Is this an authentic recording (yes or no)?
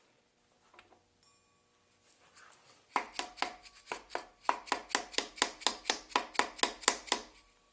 yes